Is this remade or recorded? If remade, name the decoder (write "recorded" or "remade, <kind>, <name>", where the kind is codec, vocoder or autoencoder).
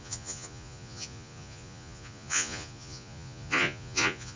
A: remade, vocoder, Vocos